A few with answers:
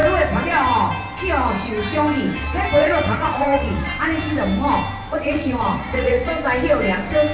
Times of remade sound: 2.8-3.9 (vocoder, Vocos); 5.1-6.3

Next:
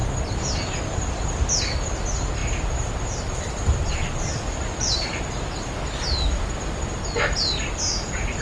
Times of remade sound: none

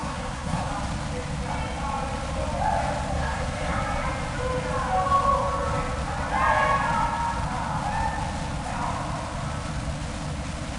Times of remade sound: 0.0-0.7 (codec, SNAC); 3.1-3.8

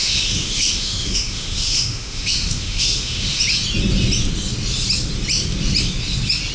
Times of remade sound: 0.0-3.4 (autoencoder, DAC-VAE)

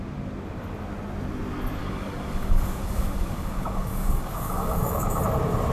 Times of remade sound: 1.8-5.2 (codec, DAC)

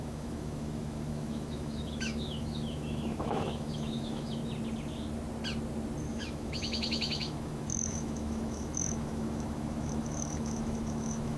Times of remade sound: 0.0-4.4 (autoencoder, DAC-VAE); 6.1-11.4

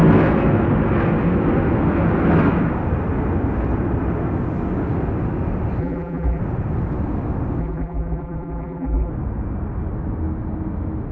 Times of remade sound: 5.8-6.4 (vocoder, BigVGAN v2); 7.6-9.1